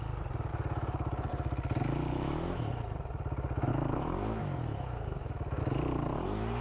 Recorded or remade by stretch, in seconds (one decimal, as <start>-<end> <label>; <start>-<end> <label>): 0.0-2.1 recorded; 2.1-2.7 remade; 2.7-3.7 recorded; 3.7-5.6 remade; 5.6-6.6 recorded